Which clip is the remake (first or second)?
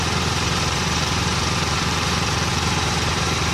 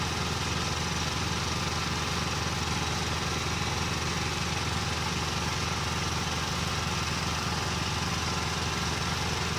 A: first